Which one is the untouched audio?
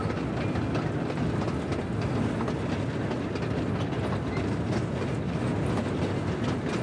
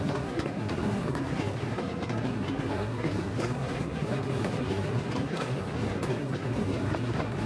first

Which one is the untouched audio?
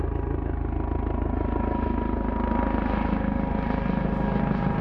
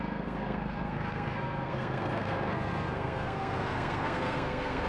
first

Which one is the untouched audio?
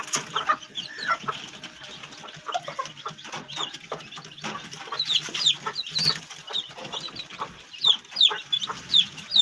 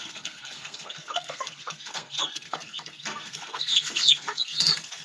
first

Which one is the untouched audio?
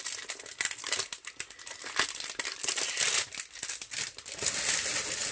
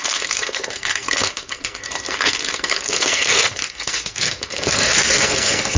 first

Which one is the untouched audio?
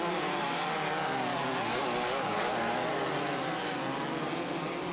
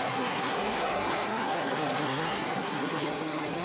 first